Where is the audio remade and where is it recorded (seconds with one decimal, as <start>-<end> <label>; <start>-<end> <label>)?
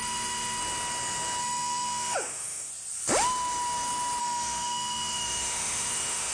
0.0-0.6 remade; 0.6-1.4 recorded; 1.4-2.7 remade; 2.7-4.2 recorded; 4.2-6.3 remade